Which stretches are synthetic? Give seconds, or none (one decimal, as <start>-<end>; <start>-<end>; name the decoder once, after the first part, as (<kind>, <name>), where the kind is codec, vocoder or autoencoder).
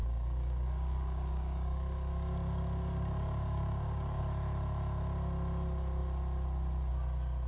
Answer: 0.0-4.2 (codec, DAC)